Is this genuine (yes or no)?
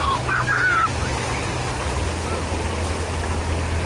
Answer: yes